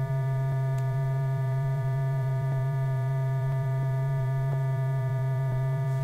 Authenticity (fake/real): fake